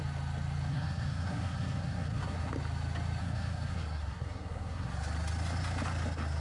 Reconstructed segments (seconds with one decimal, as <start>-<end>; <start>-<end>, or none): 0.7-2.5; 3.2-4.9